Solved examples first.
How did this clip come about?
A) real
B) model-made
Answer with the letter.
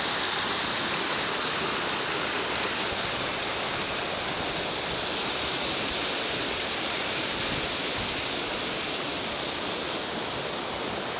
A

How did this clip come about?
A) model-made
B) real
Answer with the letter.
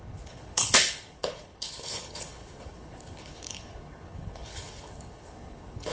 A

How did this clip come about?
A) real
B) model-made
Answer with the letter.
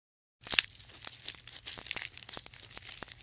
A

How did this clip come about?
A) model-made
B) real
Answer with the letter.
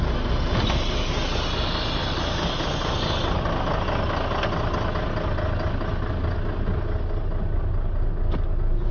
B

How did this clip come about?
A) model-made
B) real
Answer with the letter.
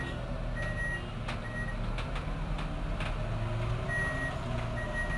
B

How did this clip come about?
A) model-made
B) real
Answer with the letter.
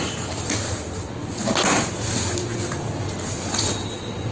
B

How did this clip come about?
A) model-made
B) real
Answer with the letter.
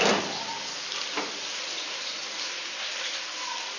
B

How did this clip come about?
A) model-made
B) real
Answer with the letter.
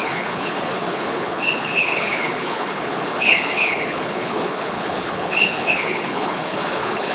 A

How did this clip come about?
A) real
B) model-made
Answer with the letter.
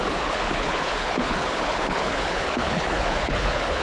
B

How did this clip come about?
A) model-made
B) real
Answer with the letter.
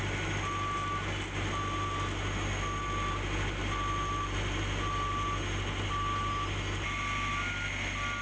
B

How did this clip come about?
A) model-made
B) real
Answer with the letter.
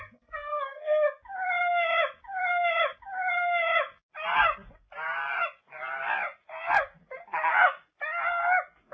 B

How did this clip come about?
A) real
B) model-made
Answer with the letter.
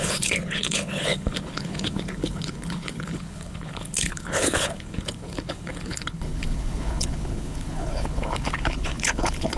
B